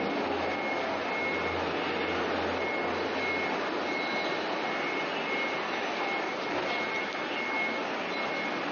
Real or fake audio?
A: real